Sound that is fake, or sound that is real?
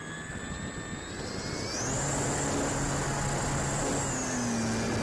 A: real